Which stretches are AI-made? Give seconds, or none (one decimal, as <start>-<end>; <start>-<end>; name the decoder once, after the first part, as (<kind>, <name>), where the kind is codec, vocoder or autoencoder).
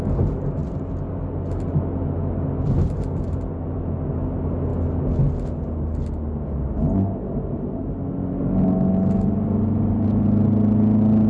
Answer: none